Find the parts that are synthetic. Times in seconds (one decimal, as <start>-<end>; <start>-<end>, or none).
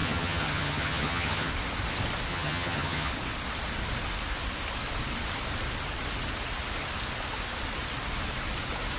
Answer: 0.0-1.5; 2.3-3.1